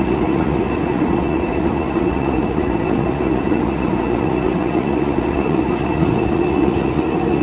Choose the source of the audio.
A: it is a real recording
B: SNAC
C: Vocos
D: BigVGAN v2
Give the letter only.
C